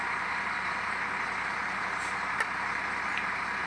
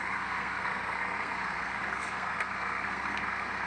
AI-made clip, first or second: second